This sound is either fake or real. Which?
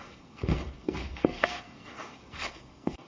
fake